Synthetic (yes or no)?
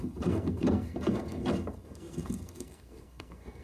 yes